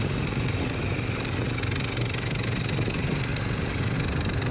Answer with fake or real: real